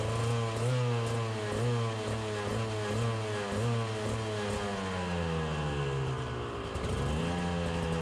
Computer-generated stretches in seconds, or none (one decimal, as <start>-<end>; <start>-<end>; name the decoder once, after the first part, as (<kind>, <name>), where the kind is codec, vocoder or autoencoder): none